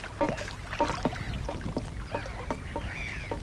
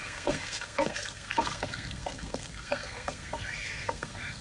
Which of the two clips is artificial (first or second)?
second